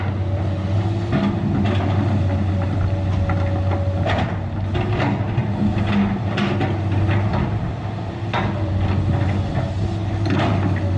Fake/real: real